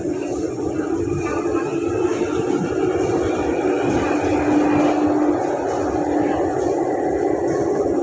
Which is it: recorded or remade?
recorded